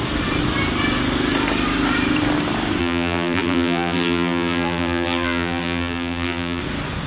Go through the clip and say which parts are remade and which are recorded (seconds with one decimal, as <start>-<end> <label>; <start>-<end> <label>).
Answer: 0.0-2.8 recorded; 2.8-6.6 remade; 6.6-7.1 recorded